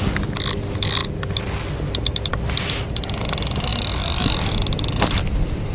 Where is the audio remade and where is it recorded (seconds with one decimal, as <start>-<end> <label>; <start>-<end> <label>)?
0.0-5.7 recorded

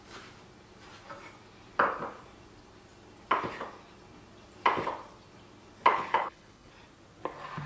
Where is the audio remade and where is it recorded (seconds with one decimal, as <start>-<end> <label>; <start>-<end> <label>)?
0.0-5.9 recorded; 5.9-6.7 remade; 6.7-7.7 recorded

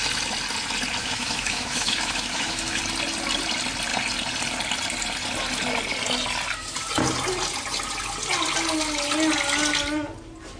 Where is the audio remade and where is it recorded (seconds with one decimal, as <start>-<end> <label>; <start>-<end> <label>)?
0.0-1.0 recorded; 1.0-2.8 remade; 2.8-10.6 recorded

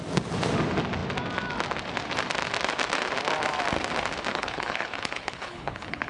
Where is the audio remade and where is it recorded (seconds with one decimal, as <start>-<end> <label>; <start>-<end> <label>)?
0.0-4.3 recorded; 4.3-6.1 remade